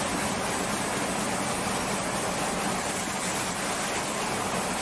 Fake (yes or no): no